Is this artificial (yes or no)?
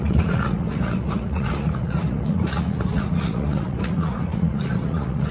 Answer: yes